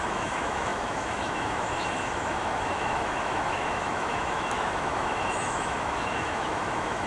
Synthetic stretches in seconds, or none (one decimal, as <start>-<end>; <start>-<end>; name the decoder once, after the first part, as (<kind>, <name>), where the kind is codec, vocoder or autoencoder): 0.0-7.1 (autoencoder, DAC-VAE)